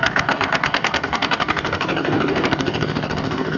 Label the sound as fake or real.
fake